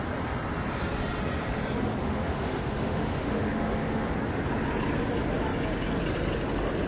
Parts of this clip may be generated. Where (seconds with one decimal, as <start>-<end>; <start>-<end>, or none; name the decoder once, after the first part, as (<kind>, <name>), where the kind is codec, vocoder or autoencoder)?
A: 2.0-4.1 (autoencoder, DAC-VAE)